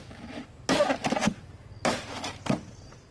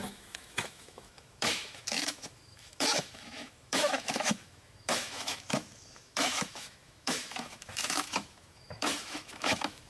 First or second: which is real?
first